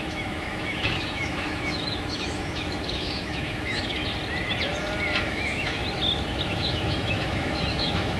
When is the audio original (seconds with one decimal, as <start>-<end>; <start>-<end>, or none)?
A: 4.0-5.2; 5.8-6.5